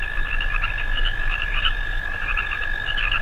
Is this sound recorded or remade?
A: remade